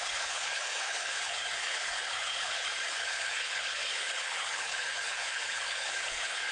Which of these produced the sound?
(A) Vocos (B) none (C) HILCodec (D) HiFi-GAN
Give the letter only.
C